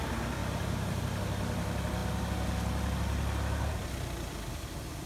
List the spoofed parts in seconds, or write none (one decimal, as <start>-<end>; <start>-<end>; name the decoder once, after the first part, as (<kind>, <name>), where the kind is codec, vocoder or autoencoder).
0.4-1.0 (vocoder, BigVGAN v2)